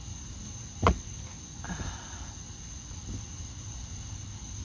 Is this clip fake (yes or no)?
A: no